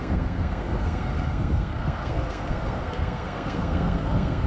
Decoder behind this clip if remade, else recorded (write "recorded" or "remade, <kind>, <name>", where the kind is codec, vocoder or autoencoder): remade, codec, SNAC